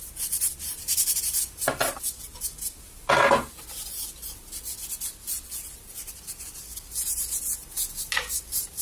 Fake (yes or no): no